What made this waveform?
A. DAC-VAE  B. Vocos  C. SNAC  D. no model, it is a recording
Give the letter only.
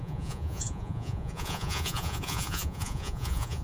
B